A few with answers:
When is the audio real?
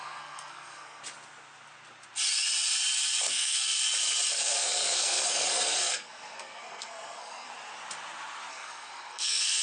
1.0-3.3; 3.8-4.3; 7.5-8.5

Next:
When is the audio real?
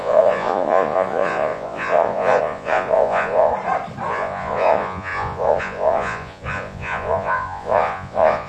3.5-4.1